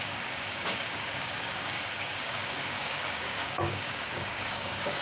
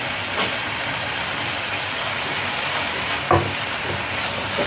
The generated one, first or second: first